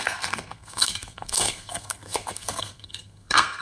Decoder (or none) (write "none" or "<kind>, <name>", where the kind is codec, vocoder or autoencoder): codec, SNAC